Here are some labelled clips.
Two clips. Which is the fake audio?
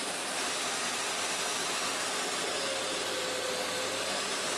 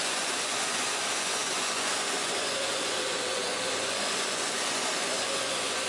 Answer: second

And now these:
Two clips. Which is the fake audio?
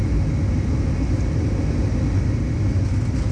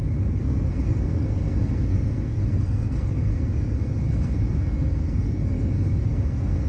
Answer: second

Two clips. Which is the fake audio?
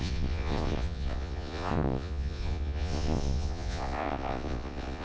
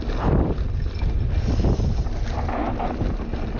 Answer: first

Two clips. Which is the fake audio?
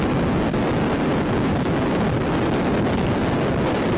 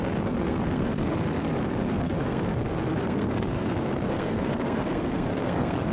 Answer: second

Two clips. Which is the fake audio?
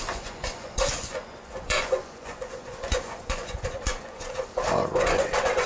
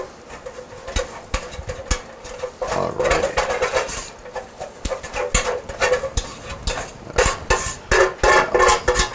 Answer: first